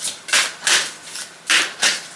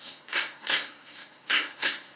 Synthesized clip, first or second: second